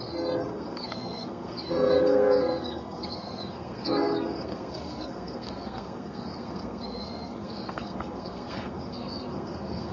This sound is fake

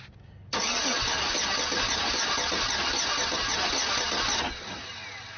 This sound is real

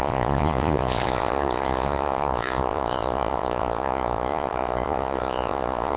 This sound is fake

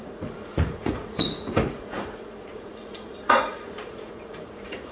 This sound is fake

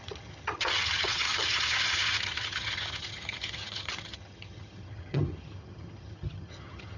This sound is fake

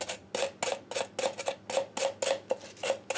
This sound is real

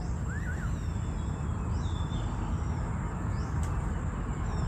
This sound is real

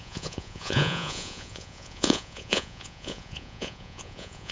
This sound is fake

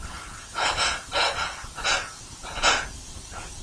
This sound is fake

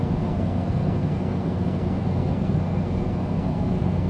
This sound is fake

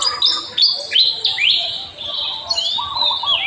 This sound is real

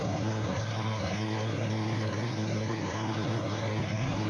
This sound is fake